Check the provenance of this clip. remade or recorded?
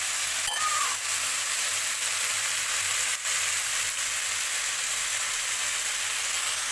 recorded